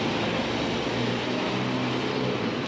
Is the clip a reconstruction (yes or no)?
no